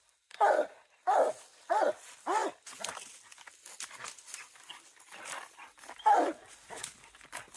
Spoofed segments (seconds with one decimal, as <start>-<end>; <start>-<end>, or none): none